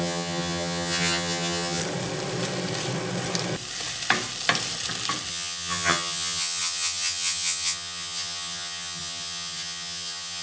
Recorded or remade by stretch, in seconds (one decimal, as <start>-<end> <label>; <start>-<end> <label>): 0.0-1.8 remade; 1.8-5.3 recorded; 5.3-10.4 remade